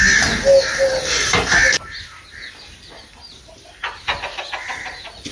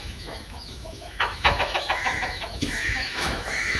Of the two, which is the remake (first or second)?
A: second